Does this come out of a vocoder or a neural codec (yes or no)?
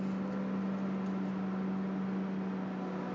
no